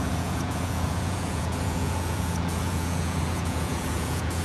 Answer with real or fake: fake